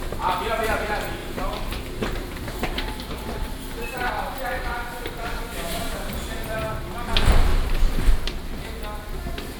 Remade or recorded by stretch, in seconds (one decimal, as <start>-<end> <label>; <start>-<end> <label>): 0.0-1.2 recorded; 1.2-4.1 remade; 4.1-7.5 recorded; 7.5-8.1 remade; 8.1-9.6 recorded